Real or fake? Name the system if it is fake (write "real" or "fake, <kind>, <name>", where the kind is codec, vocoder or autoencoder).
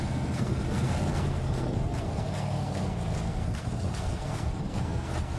fake, codec, SNAC